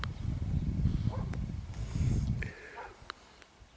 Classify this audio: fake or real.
real